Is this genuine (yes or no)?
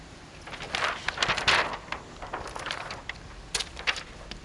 yes